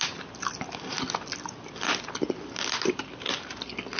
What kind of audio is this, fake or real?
real